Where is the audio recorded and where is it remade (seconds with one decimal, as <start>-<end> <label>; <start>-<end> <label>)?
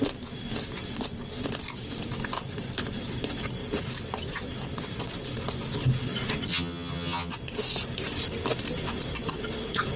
0.0-6.5 recorded; 6.5-7.3 remade; 7.3-10.0 recorded